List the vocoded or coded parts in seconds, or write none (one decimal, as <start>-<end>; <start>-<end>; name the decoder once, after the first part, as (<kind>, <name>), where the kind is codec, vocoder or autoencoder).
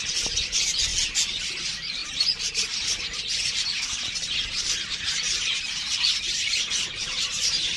0.0-0.9 (vocoder, BigVGAN v2); 1.6-7.8